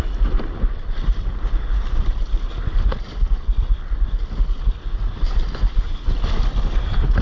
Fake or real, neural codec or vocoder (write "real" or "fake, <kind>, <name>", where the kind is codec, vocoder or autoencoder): real